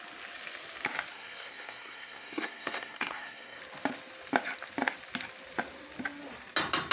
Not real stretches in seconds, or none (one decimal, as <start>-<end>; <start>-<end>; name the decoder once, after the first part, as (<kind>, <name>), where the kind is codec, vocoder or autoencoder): 1.1-3.6 (codec, SNAC)